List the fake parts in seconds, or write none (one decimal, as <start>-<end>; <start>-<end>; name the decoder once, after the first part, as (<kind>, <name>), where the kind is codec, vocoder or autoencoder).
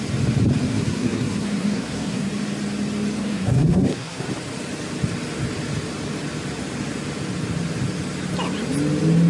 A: 0.7-2.3 (codec, SNAC); 3.2-4.2